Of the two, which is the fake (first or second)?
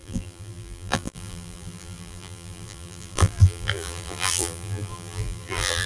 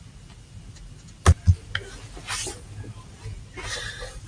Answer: first